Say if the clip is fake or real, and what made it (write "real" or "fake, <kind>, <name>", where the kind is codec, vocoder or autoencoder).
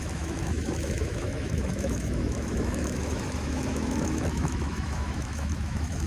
fake, autoencoder, DAC-VAE